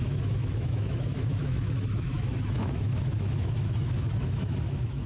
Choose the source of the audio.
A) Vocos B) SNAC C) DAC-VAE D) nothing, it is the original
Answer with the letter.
C